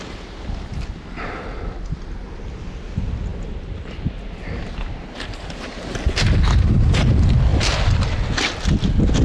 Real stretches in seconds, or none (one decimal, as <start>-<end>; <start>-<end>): 0.0-7.5; 8.0-9.2